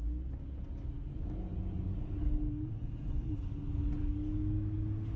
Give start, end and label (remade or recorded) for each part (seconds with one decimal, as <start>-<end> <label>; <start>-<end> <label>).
0.0-1.1 recorded; 1.1-2.7 remade; 2.7-4.0 recorded; 4.0-5.2 remade